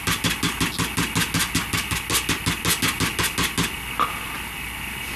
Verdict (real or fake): real